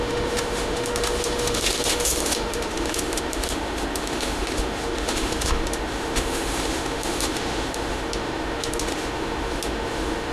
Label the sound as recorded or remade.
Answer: remade